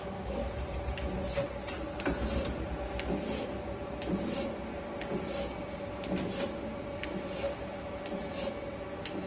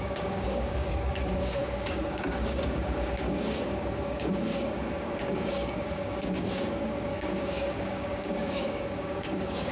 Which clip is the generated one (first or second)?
second